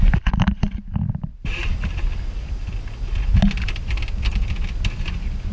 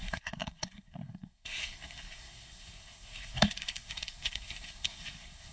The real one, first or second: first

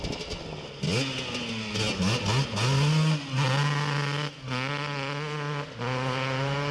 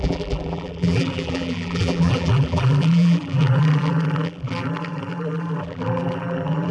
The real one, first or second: first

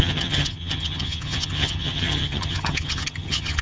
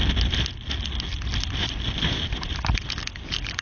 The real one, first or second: second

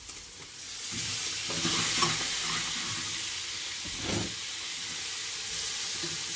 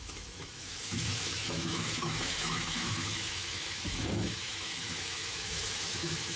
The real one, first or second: first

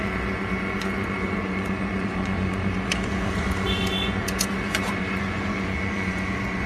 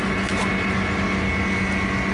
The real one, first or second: second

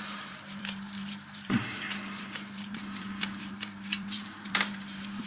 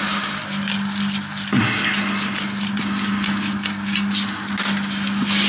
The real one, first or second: second